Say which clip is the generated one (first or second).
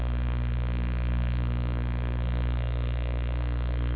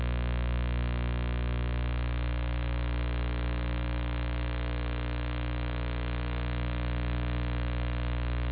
first